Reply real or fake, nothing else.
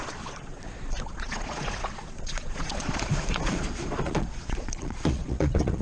fake